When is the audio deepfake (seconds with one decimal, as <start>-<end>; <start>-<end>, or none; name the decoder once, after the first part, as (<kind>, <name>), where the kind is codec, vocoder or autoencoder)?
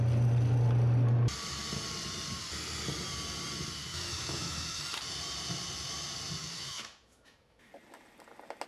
3.9-4.8 (autoencoder, DAC-VAE); 6.4-7.7